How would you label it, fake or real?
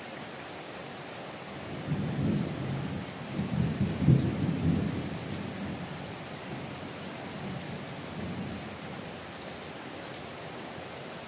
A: real